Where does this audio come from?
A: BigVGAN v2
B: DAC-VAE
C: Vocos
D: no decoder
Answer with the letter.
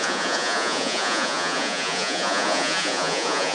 C